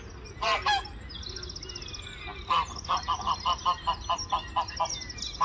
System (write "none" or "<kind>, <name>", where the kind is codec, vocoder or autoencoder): none